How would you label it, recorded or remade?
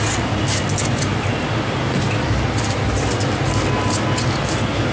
recorded